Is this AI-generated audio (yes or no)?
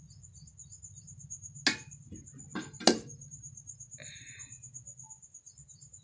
no